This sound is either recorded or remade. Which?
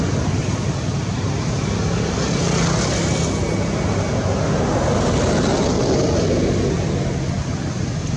recorded